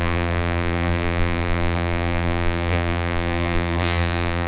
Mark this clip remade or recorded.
remade